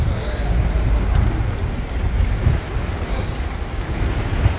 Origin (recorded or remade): recorded